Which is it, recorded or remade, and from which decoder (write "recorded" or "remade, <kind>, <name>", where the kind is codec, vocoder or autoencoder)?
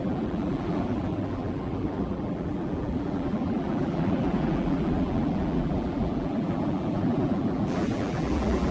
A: remade, vocoder, BigVGAN v2